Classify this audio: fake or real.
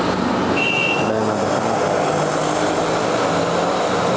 real